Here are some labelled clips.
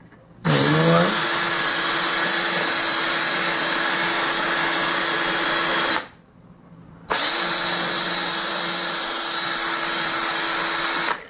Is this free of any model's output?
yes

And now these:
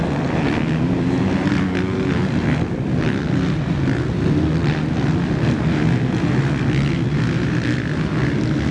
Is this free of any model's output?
yes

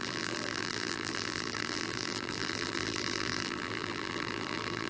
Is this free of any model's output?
no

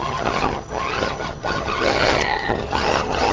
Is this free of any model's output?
no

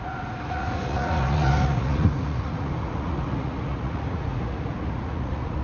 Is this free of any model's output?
no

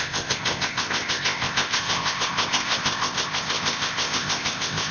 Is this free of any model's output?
no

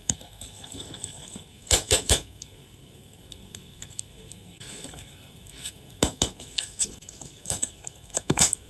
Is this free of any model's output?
no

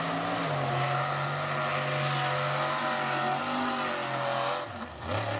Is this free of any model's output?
yes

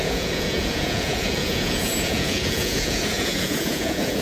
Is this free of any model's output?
no